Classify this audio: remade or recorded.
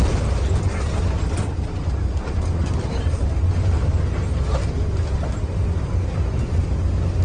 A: recorded